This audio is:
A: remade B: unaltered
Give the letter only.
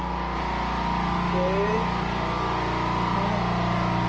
B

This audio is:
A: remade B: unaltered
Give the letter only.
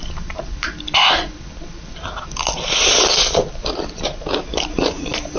B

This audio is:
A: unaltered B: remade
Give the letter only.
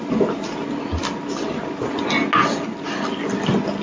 A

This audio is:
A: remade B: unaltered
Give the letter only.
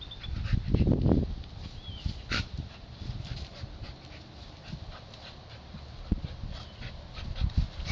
B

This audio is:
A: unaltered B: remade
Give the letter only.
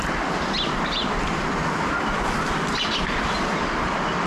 A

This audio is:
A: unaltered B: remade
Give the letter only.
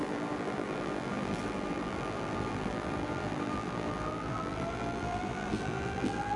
B